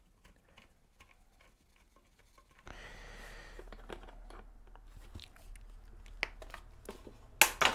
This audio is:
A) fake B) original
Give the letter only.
B